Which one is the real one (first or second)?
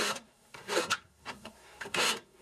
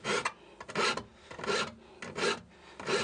second